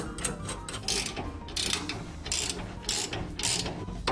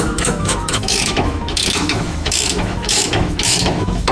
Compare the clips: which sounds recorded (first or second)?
first